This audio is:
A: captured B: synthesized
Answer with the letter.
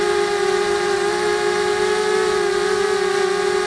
A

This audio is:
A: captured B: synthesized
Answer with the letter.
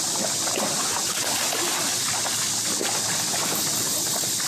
A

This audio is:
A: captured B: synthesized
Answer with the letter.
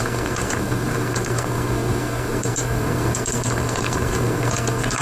B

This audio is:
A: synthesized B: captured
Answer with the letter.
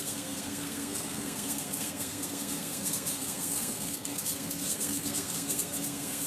A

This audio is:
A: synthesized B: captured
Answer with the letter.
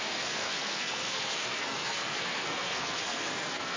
A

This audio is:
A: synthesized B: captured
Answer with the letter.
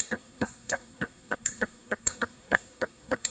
A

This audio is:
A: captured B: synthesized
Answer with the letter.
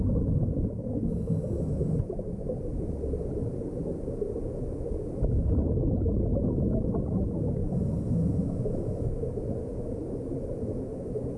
A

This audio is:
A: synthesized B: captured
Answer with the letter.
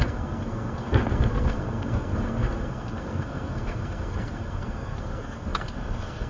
A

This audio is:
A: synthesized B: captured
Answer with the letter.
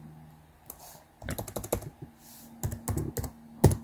B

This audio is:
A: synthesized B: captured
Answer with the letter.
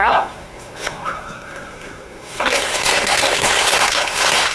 A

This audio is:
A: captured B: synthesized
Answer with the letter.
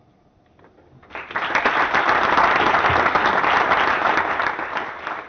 A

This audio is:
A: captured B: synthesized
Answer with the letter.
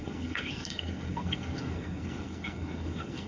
B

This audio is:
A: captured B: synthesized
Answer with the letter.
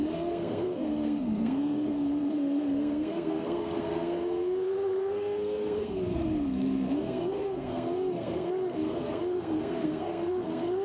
B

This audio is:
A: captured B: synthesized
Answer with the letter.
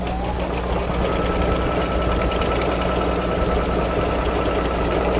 A